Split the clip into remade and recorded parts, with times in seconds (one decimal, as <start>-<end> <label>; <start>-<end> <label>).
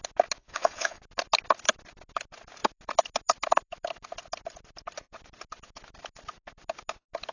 0.0-0.4 recorded; 0.4-1.0 remade; 1.0-7.3 recorded